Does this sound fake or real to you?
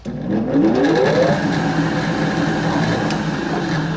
real